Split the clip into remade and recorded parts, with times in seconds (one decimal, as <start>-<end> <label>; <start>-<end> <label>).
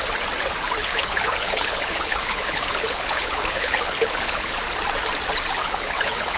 0.0-0.8 recorded; 0.8-4.6 remade; 4.6-5.6 recorded; 5.6-6.4 remade